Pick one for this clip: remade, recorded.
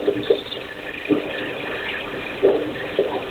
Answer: remade